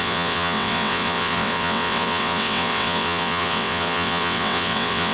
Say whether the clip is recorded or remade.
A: remade